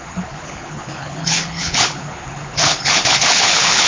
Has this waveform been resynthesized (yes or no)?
yes